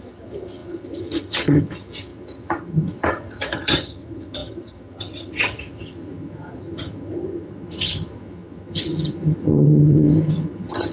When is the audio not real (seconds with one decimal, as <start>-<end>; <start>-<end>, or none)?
0.0-10.9